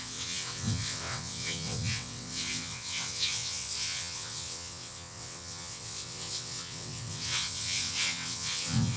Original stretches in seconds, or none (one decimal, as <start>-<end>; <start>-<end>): none